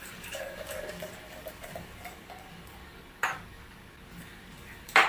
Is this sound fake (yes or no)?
yes